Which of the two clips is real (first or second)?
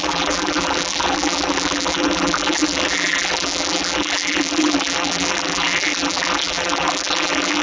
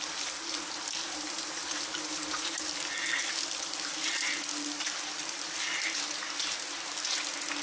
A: second